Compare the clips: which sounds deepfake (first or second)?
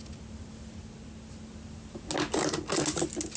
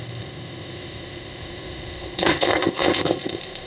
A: second